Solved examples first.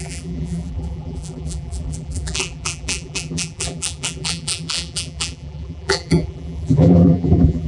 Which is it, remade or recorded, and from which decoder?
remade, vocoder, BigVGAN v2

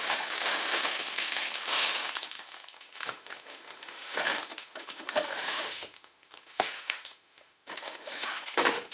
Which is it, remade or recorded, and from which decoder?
remade, autoencoder, DAC-VAE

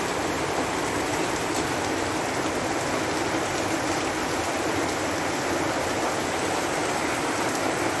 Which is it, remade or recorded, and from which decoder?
recorded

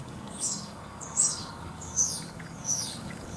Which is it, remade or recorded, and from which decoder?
remade, codec, DAC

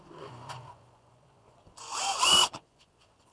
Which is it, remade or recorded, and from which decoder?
remade, vocoder, Vocos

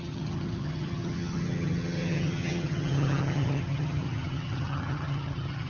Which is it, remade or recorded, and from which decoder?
remade, vocoder, HiFi-GAN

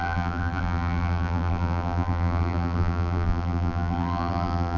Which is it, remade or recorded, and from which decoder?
remade, vocoder, BigVGAN v2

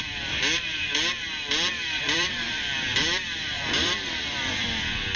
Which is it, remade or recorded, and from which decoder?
remade, vocoder, BigVGAN v2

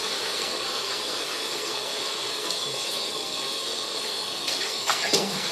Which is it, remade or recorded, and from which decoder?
remade, codec, SNAC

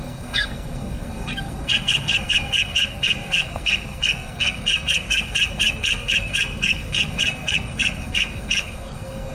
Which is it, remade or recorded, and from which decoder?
remade, codec, SNAC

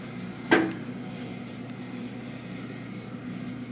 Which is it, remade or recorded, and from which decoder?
recorded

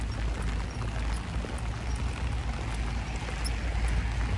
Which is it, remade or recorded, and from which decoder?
recorded